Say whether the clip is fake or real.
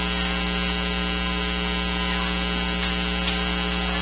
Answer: real